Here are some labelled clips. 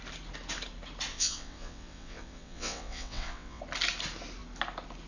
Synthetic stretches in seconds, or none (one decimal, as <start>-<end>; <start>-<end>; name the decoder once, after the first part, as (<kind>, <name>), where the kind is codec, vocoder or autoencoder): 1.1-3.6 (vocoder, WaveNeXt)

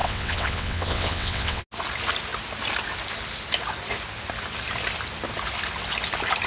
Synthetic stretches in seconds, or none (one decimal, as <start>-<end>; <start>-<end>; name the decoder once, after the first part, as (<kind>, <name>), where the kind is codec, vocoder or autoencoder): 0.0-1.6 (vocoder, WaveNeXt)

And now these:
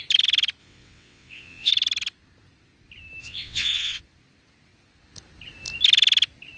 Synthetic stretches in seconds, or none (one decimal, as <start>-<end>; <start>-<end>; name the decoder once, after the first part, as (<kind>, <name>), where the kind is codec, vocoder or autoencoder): 0.6-1.7 (vocoder, WaveNeXt); 3.2-4.0

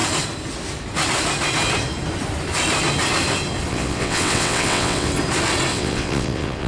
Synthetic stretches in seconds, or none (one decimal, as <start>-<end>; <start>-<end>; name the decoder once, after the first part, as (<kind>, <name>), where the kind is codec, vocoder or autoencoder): 3.7-5.1 (vocoder, WaveNeXt); 5.7-6.7